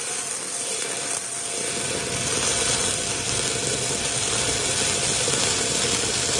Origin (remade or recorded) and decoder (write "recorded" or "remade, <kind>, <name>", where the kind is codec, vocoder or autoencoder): recorded